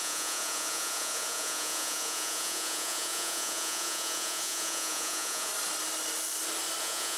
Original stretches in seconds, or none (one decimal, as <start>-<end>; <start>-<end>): 5.5-6.8